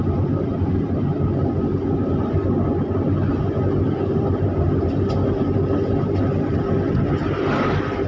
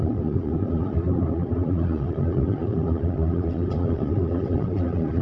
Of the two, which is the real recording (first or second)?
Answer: first